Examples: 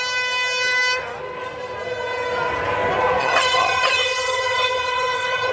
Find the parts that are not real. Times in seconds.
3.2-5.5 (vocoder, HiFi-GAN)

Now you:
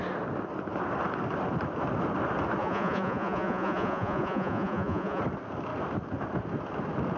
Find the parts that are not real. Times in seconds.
2.6-5.2 (vocoder, Vocos)